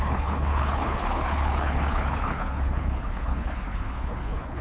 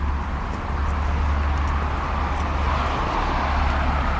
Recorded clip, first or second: second